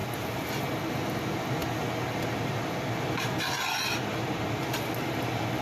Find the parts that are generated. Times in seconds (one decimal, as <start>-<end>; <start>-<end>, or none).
none